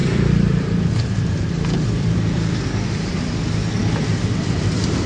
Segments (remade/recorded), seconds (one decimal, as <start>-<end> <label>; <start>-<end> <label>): 0.0-3.1 remade; 3.1-3.8 recorded; 3.8-5.1 remade